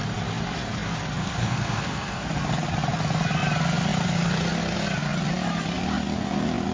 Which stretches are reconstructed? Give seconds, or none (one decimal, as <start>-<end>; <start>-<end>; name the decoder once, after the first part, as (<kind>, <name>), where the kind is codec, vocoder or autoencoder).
1.2-2.4 (codec, SNAC)